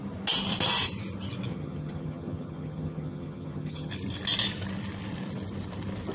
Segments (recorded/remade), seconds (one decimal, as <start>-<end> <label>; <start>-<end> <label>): 0.0-1.5 recorded; 1.5-3.9 remade; 3.9-6.1 recorded